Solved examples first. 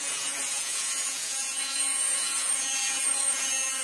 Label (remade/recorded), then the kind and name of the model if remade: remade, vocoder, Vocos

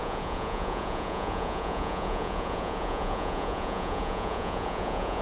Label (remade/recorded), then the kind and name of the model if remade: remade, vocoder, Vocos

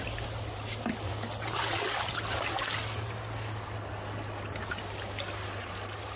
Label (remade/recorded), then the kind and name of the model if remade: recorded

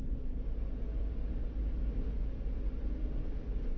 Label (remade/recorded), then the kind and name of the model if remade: recorded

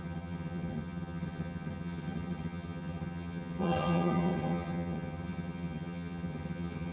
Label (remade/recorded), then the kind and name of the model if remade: remade, vocoder, HiFi-GAN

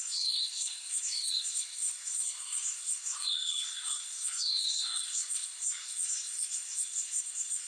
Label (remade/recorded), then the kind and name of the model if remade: remade, codec, SNAC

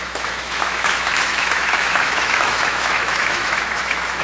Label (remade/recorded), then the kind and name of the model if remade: remade, autoencoder, DAC-VAE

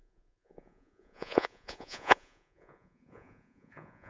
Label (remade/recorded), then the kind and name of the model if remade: remade, vocoder, Vocos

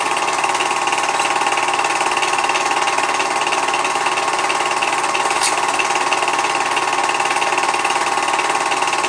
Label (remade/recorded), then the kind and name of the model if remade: recorded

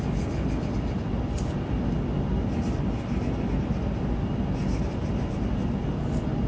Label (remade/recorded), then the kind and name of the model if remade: recorded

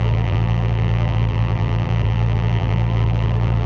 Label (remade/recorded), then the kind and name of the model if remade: remade, vocoder, BigVGAN v2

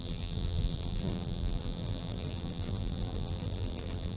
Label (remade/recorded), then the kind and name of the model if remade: remade, vocoder, BigVGAN v2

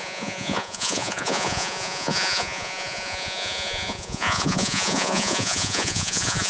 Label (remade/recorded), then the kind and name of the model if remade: remade, vocoder, Vocos